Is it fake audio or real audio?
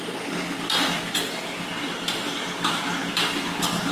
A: real